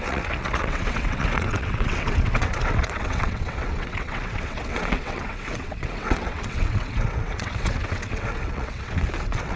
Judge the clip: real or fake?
fake